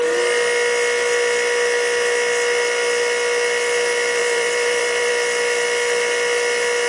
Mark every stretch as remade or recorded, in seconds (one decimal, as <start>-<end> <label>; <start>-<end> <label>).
0.0-4.2 recorded; 4.2-5.1 remade; 5.1-6.9 recorded